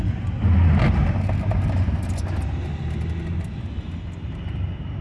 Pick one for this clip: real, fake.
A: real